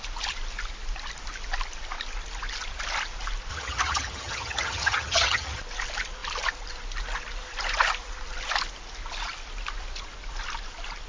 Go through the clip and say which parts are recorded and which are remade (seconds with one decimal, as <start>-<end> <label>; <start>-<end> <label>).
0.0-3.5 recorded; 3.5-5.6 remade; 5.6-11.1 recorded